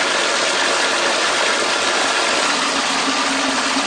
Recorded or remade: recorded